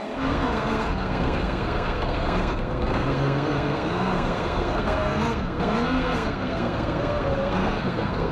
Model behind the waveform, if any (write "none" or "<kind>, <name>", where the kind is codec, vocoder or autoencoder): codec, SNAC